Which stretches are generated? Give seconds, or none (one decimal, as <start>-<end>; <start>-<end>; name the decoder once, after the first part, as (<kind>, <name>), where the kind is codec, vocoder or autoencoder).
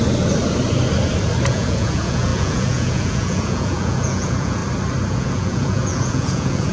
1.5-4.6 (vocoder, Vocos); 5.1-6.7